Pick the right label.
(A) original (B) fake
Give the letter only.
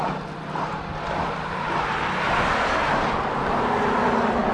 A